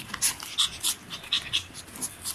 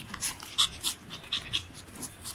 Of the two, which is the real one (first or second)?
first